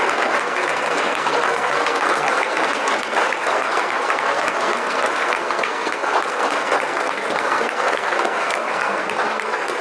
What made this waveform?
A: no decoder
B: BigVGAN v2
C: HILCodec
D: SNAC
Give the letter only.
D